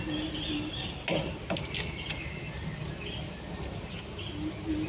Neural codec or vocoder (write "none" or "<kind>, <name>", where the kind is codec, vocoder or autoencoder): none